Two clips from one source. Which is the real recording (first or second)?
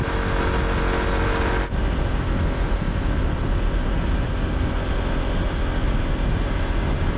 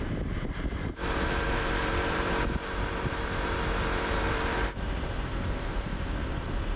first